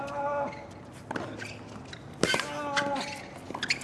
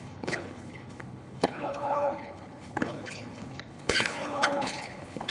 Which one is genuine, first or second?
first